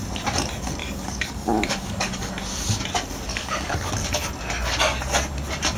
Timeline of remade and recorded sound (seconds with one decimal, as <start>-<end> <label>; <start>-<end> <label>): 0.0-0.8 recorded; 0.8-2.3 remade; 2.3-3.3 recorded; 3.3-3.9 remade; 3.9-5.8 recorded